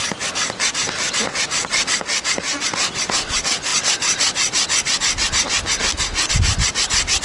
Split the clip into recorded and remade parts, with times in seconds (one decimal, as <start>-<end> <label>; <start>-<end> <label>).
0.0-0.8 recorded; 0.8-2.6 remade; 2.6-7.2 recorded